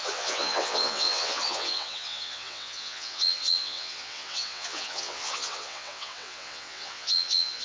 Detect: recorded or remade remade